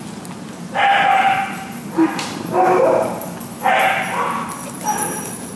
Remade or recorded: recorded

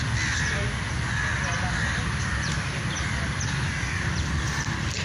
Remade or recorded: recorded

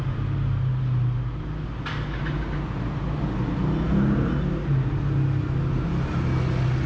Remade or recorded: recorded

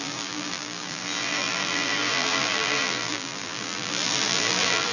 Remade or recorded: remade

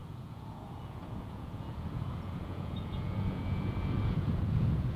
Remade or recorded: remade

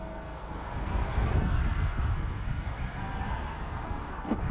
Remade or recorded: remade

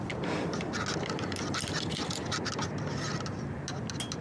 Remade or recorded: recorded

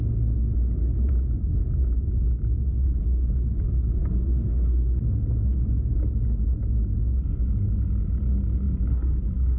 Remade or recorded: recorded